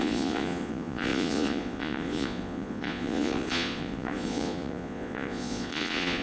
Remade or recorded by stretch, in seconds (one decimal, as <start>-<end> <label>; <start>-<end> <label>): 0.0-6.2 remade